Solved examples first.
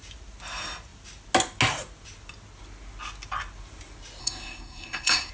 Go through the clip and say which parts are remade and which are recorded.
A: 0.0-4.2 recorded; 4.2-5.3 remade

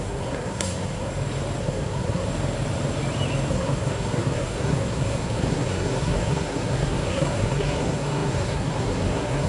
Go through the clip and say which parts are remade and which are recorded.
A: 0.0-1.1 remade; 1.1-1.6 recorded; 1.6-2.3 remade; 2.3-3.5 recorded; 3.5-9.5 remade

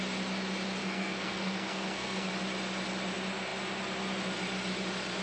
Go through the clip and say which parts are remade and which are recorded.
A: 0.0-0.8 recorded; 0.8-2.3 remade; 2.3-5.2 recorded

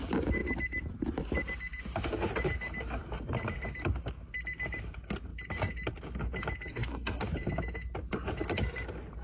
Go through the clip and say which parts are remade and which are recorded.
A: 0.0-6.7 recorded; 6.7-7.2 remade; 7.2-9.2 recorded

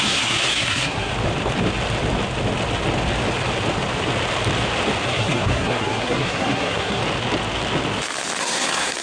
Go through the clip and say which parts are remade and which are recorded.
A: 0.0-1.1 remade; 1.1-5.1 recorded; 5.1-7.0 remade; 7.0-8.4 recorded; 8.4-9.0 remade

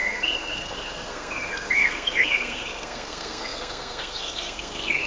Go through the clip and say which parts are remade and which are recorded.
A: 0.0-5.1 remade

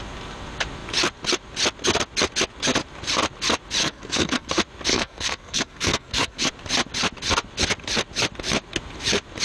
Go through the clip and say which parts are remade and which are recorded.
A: 0.0-3.8 recorded; 3.8-4.5 remade; 4.5-4.9 recorded; 4.9-6.5 remade; 6.5-9.4 recorded

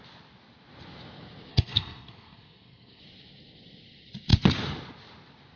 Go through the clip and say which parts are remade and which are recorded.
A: 0.0-1.5 recorded; 1.5-3.0 remade; 3.0-5.6 recorded